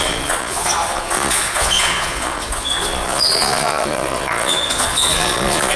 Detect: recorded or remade remade